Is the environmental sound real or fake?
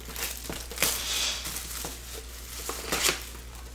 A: real